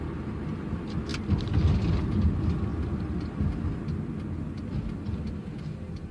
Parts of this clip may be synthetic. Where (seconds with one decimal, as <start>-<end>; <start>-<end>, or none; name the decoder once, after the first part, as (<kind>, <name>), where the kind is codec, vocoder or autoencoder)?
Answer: none